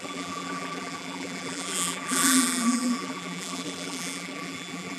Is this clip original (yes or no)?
no